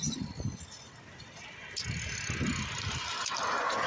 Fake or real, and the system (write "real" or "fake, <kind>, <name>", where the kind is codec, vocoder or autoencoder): real